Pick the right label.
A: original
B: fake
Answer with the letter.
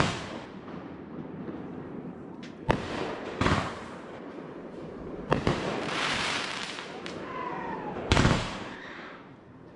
B